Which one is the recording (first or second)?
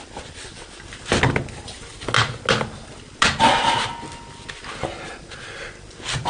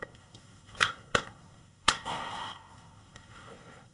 first